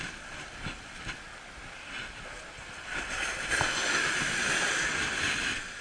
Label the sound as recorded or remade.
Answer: recorded